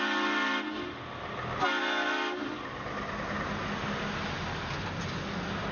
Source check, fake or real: real